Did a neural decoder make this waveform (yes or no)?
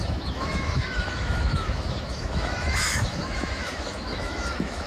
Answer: yes